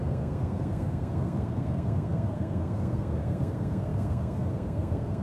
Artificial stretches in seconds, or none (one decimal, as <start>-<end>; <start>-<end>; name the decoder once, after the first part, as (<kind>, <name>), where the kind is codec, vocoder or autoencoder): 0.0-5.2 (codec, SNAC)